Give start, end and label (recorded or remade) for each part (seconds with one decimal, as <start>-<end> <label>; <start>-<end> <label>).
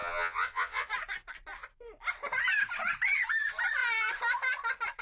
0.0-0.9 remade; 0.9-5.0 recorded